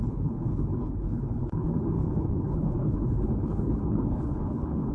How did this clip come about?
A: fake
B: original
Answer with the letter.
A